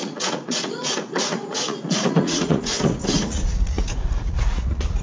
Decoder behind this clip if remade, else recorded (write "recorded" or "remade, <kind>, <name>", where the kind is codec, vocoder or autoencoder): remade, vocoder, Vocos